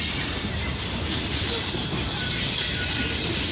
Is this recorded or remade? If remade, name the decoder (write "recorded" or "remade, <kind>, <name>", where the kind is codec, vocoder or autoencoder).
recorded